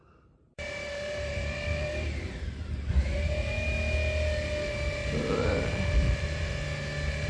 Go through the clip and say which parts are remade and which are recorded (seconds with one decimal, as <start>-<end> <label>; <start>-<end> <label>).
0.0-2.9 remade; 2.9-5.2 recorded; 5.2-6.5 remade; 6.5-7.3 recorded